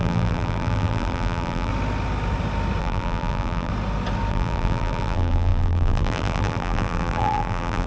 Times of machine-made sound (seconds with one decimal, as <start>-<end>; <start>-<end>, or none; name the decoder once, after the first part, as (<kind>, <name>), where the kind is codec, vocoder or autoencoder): 0.0-1.7 (vocoder, BigVGAN v2); 2.8-3.7; 4.3-7.9